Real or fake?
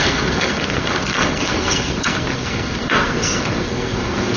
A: fake